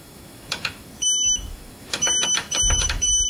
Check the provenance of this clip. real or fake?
fake